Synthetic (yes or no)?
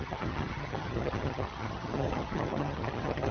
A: yes